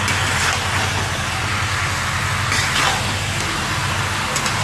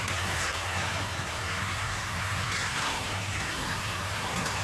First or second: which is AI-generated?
second